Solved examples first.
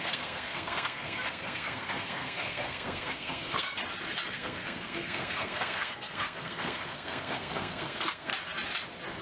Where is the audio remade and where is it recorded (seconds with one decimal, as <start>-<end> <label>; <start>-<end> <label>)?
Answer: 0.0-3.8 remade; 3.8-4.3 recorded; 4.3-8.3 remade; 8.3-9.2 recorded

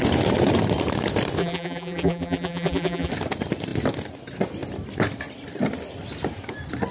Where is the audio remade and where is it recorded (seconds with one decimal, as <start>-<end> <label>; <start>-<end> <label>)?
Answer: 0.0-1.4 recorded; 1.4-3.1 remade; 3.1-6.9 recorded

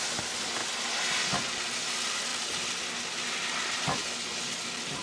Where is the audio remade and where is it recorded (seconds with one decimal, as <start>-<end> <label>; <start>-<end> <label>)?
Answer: 0.0-0.6 remade; 0.6-1.9 recorded; 1.9-4.0 remade; 4.0-5.0 recorded

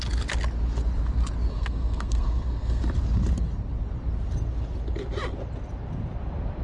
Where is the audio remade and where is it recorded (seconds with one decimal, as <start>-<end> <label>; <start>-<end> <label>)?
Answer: 0.0-1.5 recorded; 1.5-2.8 remade; 2.8-6.6 recorded